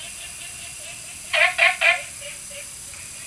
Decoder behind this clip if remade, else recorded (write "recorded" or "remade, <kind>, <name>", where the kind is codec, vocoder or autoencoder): recorded